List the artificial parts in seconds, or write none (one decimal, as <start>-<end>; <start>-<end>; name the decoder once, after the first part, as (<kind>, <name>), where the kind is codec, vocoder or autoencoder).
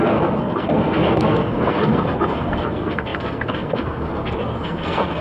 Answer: 0.0-5.2 (codec, SNAC)